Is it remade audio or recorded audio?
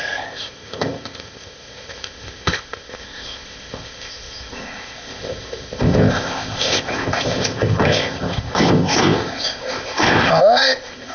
remade